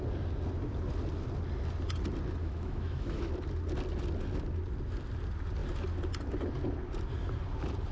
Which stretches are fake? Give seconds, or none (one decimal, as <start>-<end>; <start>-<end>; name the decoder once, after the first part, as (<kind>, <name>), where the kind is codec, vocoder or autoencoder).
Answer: 2.4-3.3 (autoencoder, DAC-VAE)

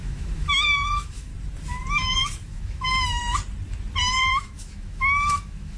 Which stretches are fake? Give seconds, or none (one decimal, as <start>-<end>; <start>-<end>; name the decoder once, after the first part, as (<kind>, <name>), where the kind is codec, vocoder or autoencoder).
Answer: 0.0-1.3 (autoencoder, DAC-VAE); 1.9-3.2; 4.3-5.8

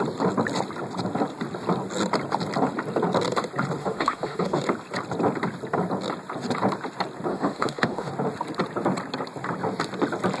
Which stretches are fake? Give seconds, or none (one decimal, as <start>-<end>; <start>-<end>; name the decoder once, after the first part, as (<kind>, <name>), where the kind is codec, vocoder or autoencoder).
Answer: 3.8-4.6 (autoencoder, DAC-VAE); 7.3-8.1

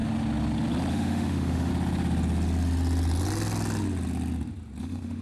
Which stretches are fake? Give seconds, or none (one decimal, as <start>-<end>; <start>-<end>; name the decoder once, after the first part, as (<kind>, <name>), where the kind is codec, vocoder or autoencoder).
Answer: 0.9-1.7 (autoencoder, DAC-VAE); 4.8-5.2

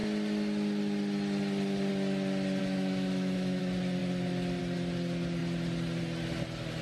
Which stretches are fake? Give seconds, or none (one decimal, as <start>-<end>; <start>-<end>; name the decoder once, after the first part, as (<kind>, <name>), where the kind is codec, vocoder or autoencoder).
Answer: 2.6-3.6 (autoencoder, DAC-VAE)

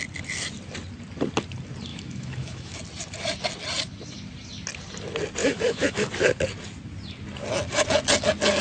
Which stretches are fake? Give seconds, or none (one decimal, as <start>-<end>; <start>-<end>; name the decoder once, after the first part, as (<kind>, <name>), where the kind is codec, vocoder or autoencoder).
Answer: 1.9-2.8 (autoencoder, DAC-VAE); 5.4-6.1

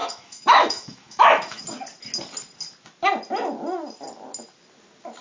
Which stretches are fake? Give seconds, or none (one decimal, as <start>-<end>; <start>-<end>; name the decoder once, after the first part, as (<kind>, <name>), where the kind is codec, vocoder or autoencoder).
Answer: 0.0-1.6 (autoencoder, DAC-VAE)